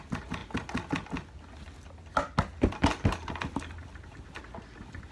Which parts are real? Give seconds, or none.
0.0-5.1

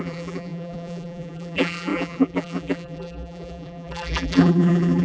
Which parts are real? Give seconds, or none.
none